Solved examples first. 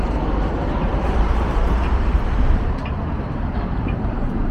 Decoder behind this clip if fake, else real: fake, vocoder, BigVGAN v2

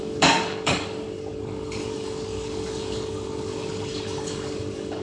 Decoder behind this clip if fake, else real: fake, codec, DAC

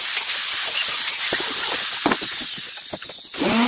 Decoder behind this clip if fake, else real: real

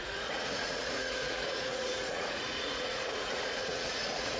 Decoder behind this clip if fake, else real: fake, vocoder, Vocos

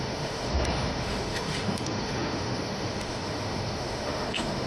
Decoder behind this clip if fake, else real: fake, autoencoder, DAC-VAE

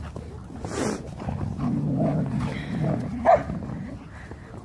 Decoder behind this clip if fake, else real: real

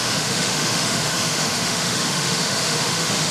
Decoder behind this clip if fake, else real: fake, autoencoder, DAC-VAE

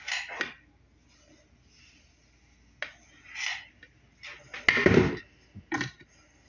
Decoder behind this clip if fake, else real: real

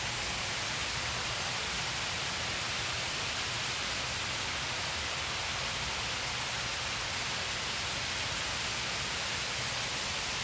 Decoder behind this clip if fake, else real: real